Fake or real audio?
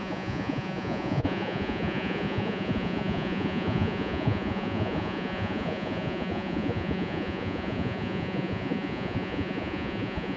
fake